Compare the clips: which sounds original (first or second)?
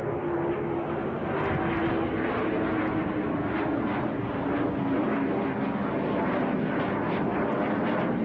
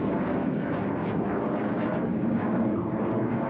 first